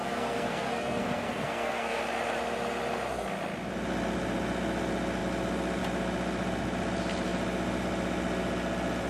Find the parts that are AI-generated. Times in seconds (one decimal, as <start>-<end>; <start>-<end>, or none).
0.0-2.0